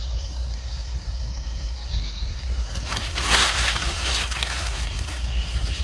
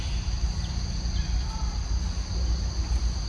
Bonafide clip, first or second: second